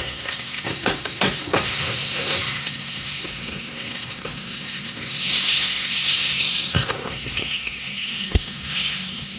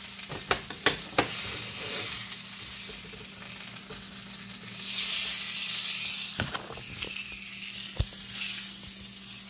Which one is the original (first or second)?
second